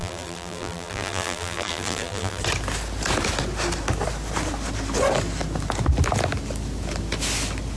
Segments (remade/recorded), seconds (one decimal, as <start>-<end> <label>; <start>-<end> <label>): 0.0-2.4 remade; 2.4-7.8 recorded